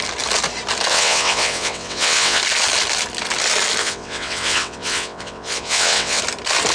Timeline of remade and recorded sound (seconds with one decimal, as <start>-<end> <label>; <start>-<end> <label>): 0.0-0.9 recorded; 0.9-2.4 remade; 2.4-3.8 recorded; 3.8-6.2 remade; 6.2-6.7 recorded